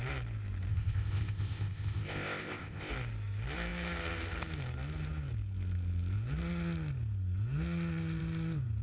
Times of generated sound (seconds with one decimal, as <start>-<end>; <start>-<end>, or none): 0.7-2.9